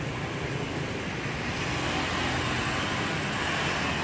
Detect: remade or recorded recorded